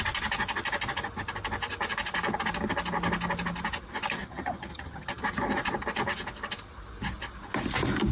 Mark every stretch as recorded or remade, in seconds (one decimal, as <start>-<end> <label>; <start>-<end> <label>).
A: 0.0-4.2 recorded; 4.2-5.2 remade; 5.2-8.1 recorded

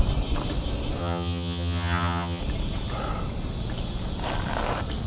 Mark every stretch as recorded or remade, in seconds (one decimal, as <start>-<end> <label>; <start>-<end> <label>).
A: 0.0-1.0 recorded; 1.0-2.4 remade; 2.4-5.1 recorded

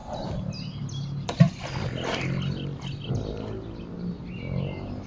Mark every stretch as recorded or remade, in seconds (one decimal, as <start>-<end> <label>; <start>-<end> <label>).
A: 0.0-5.1 recorded